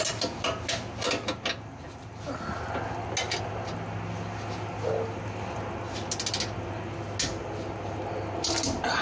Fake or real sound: real